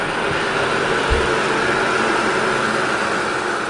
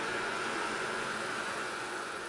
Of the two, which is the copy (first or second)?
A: second